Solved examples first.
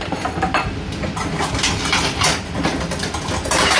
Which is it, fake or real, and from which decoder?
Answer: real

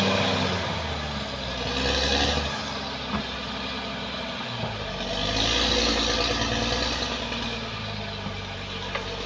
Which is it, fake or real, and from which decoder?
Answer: real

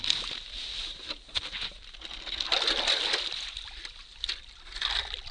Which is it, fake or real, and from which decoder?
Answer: real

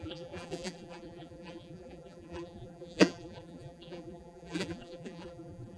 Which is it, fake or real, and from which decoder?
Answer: fake, vocoder, BigVGAN v2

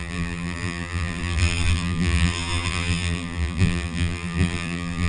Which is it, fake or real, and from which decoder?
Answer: fake, vocoder, BigVGAN v2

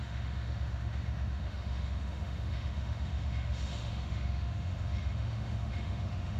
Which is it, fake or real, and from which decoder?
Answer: fake, autoencoder, DAC-VAE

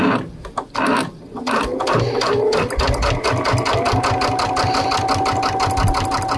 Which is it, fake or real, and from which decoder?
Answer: real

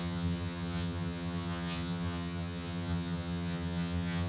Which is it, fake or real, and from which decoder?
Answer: fake, vocoder, HiFi-GAN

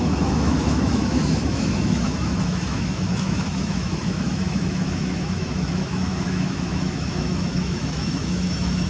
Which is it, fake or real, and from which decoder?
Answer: fake, autoencoder, DAC-VAE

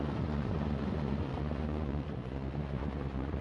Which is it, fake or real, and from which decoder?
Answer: fake, vocoder, Vocos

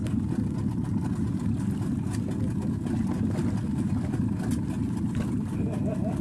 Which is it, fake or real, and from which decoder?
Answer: real